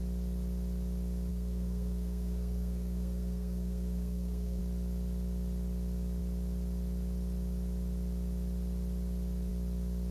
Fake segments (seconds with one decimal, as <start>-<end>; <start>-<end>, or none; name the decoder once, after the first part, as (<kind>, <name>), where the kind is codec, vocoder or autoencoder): 1.3-4.6 (codec, SNAC)